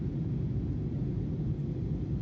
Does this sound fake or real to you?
real